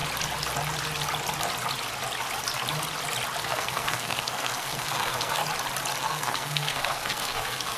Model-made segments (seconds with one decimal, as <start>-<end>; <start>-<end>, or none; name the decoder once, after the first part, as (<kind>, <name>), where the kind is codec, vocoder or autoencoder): 3.4-5.4 (codec, SNAC); 6.0-7.8